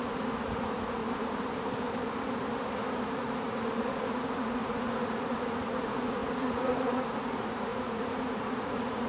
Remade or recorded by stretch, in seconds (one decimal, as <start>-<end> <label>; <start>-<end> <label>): 0.0-1.0 remade; 1.0-3.0 recorded; 3.0-9.1 remade